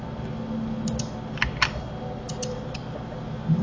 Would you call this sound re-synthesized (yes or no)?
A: no